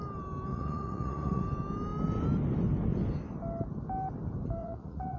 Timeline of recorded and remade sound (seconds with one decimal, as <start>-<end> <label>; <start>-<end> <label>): 0.0-0.5 recorded; 0.5-1.4 remade; 1.4-4.6 recorded; 4.6-5.2 remade